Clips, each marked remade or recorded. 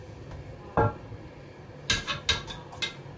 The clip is recorded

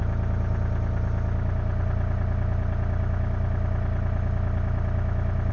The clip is recorded